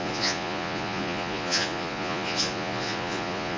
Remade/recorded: remade